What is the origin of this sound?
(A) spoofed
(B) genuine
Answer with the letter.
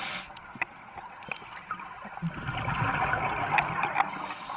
B